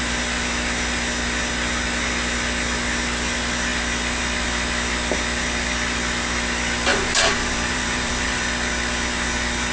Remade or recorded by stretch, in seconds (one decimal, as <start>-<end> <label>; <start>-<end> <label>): 0.0-6.9 recorded; 6.9-8.4 remade; 8.4-9.7 recorded

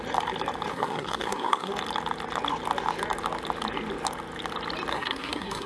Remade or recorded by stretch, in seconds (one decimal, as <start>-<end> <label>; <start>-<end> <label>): 0.0-0.7 recorded; 0.7-1.7 remade; 1.7-4.9 recorded; 4.9-5.7 remade